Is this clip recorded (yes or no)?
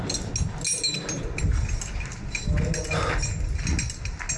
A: yes